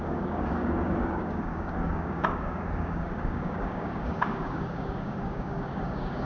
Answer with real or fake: fake